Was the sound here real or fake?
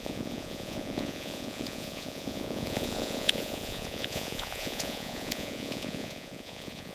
fake